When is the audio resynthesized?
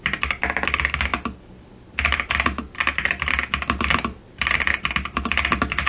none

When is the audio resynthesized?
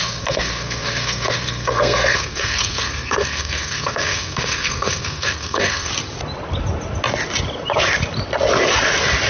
0.0-5.9 (codec, SNAC)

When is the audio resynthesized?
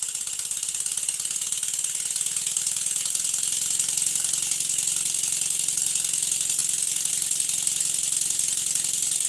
none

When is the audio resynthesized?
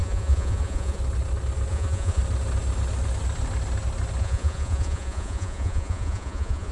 0.0-1.0 (vocoder, Vocos); 1.7-2.2; 4.2-6.7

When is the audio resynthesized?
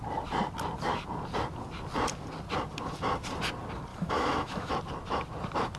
3.9-4.7 (autoencoder, DAC-VAE)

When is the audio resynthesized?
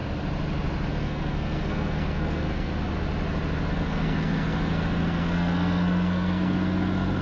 0.9-2.7 (codec, SNAC); 3.7-7.2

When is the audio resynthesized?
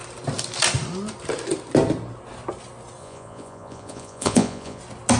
3.0-4.8 (vocoder, Vocos)